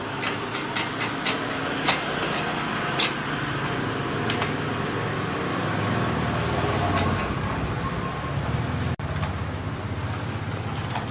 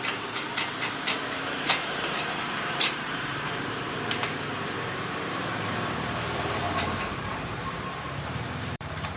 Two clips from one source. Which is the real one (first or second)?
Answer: first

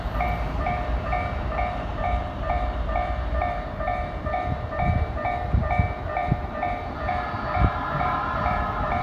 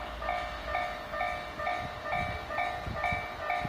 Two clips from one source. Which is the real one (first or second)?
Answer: second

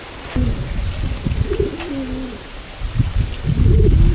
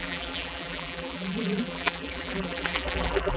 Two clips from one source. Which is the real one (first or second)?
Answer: first